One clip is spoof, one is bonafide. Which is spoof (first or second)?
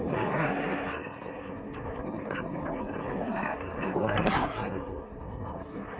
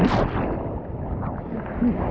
first